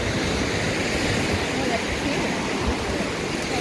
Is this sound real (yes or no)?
yes